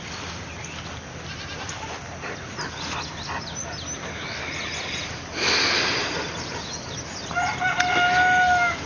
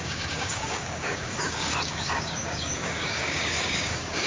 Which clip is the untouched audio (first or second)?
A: first